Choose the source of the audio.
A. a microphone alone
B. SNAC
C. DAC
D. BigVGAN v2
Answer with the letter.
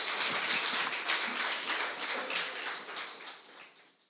A